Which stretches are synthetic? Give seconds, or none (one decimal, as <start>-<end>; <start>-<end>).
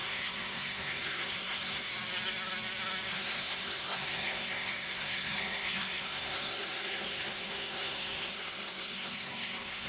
0.0-1.9; 3.1-9.9